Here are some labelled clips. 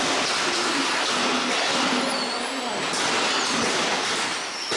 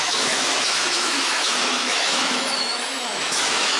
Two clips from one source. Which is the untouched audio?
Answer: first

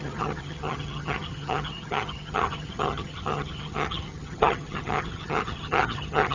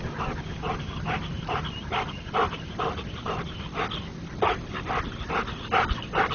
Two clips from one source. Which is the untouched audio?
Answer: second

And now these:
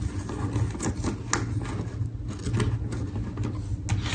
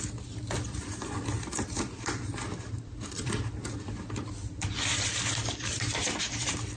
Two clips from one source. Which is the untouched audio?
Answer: first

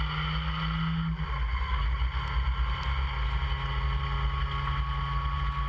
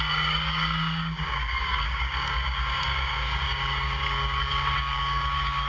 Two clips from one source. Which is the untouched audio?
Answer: first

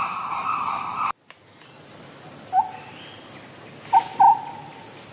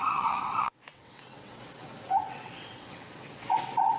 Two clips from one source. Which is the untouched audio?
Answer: first